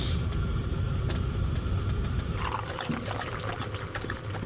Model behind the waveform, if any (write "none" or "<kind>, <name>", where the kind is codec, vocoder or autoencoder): none